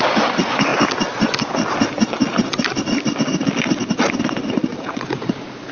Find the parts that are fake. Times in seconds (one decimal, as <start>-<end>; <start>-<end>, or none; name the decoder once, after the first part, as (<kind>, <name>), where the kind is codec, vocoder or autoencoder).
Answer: 4.7-5.7 (vocoder, Vocos)

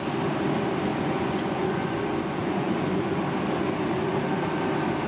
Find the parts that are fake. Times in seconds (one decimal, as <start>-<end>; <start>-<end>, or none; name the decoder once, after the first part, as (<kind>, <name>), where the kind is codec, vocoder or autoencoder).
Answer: 0.9-2.0 (vocoder, Vocos); 2.4-3.2

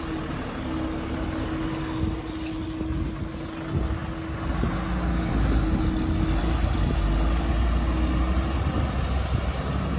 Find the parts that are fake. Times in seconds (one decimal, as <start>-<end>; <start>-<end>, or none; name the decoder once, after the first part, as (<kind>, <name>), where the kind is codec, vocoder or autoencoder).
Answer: none